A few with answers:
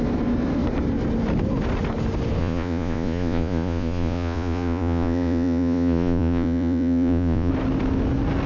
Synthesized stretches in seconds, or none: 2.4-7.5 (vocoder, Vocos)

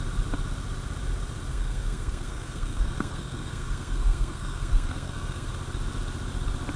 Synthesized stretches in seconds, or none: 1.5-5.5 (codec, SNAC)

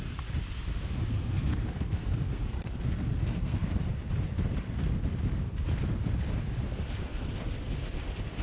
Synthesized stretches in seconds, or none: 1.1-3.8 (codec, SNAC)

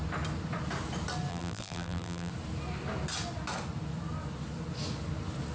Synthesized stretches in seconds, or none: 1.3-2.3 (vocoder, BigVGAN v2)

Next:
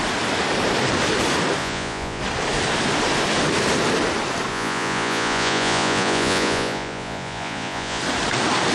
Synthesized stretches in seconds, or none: 1.6-2.2 (vocoder, Vocos); 4.5-8.0

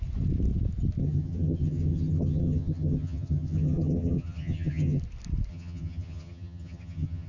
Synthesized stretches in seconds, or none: 1.0-5.0 (vocoder, HiFi-GAN); 5.5-7.3